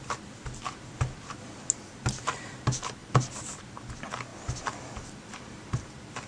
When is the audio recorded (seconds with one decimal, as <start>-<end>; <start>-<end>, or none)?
0.0-6.3